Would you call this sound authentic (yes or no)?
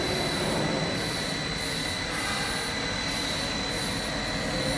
yes